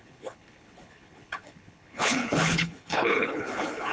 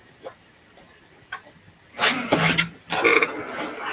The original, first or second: second